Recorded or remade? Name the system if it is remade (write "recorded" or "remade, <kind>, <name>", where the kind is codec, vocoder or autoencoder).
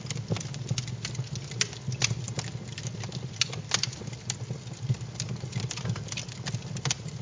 recorded